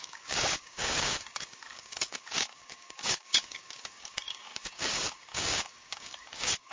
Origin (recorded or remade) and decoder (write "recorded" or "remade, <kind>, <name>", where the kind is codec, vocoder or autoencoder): remade, codec, DAC